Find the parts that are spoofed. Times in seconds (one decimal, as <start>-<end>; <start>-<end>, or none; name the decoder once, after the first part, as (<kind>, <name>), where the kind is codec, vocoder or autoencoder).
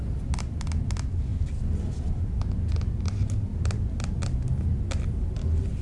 none